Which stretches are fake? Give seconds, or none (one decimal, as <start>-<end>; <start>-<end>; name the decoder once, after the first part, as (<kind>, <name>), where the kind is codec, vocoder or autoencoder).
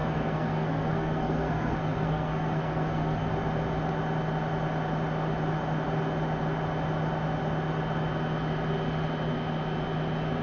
0.0-3.3 (codec, SNAC)